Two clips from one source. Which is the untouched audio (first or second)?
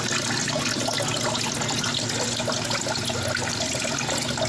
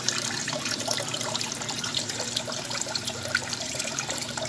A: first